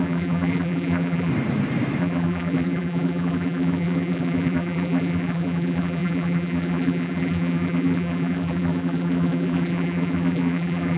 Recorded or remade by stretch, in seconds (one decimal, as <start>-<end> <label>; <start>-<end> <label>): 0.0-1.3 remade; 1.3-2.0 recorded; 2.0-11.0 remade